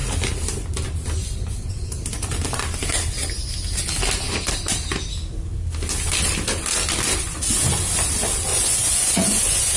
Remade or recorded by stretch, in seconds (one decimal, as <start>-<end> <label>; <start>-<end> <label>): 0.0-8.5 recorded; 8.5-9.8 remade